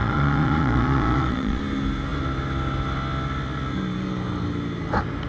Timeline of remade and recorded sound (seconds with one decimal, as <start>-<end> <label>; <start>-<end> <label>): 0.0-1.6 remade; 1.6-5.3 recorded

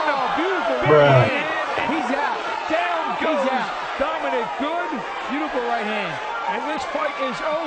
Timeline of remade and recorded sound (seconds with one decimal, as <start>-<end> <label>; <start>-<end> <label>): 0.0-1.4 recorded; 1.4-3.3 remade; 3.3-6.5 recorded; 6.5-7.1 remade; 7.1-7.7 recorded

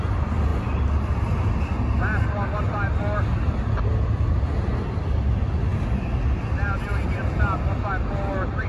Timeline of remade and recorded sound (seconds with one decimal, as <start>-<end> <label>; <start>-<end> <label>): 0.0-8.7 recorded